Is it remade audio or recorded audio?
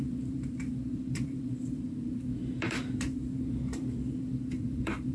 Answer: remade